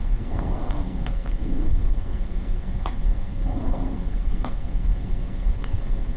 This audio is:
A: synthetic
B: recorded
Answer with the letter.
A